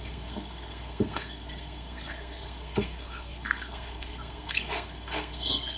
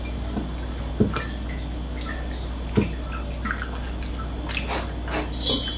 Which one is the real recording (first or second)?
second